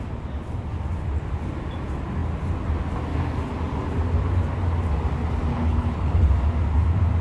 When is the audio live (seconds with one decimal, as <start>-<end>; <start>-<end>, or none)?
0.0-5.5; 6.3-7.2